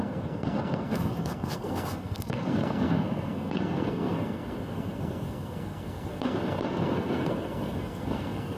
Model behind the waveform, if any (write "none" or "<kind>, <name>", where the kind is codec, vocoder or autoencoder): codec, SNAC